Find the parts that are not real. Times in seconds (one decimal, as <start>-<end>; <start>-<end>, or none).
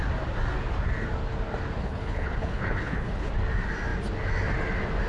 1.8-3.3